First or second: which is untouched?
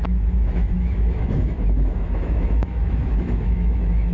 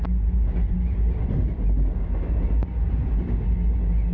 second